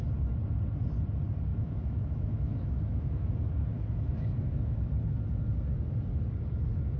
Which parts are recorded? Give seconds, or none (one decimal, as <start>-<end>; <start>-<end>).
0.0-1.5; 3.3-3.7; 4.9-7.0